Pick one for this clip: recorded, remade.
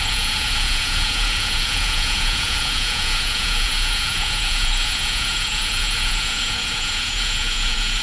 remade